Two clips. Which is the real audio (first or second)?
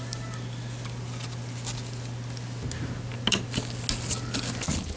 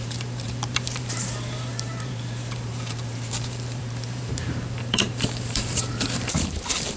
first